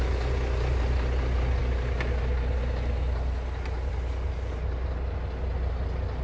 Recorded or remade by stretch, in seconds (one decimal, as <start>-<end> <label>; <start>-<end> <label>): 0.0-6.2 recorded